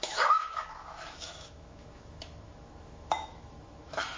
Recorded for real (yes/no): no